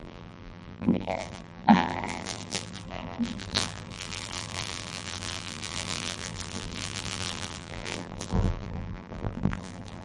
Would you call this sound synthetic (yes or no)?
yes